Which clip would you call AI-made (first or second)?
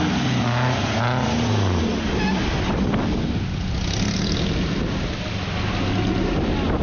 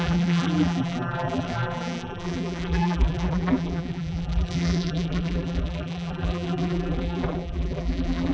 second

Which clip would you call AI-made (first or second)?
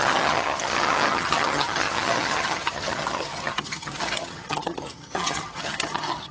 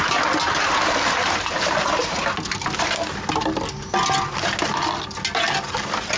first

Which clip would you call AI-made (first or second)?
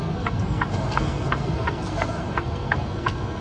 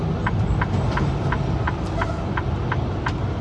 first